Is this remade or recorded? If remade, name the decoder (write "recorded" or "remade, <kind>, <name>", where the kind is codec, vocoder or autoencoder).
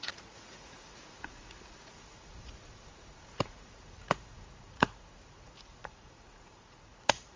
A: remade, vocoder, Vocos